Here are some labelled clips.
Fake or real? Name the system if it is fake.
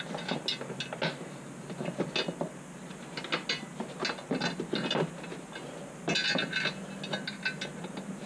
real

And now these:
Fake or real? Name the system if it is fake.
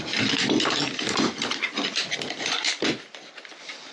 fake, vocoder, BigVGAN v2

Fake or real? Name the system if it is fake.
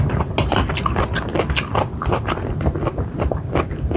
real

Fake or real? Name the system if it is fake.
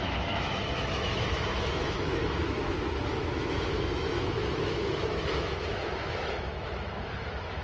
fake, autoencoder, DAC-VAE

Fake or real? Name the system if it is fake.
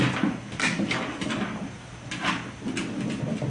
real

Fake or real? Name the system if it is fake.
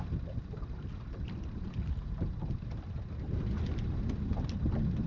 real